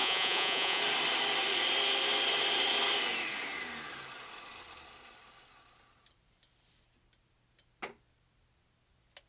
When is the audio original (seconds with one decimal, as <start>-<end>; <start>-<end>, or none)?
0.8-9.3